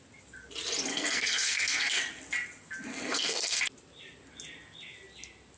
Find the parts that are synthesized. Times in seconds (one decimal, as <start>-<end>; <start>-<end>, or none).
0.9-2.0; 2.9-3.6